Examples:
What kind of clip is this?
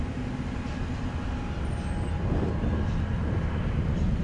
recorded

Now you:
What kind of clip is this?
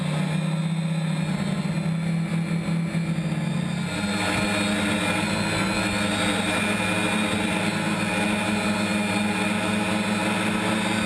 recorded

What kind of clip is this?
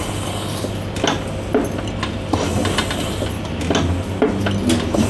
recorded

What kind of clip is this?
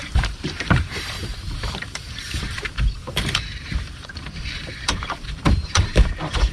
remade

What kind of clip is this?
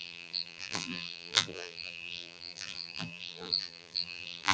remade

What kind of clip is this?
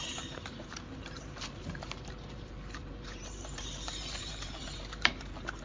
remade